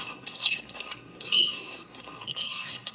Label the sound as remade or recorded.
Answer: remade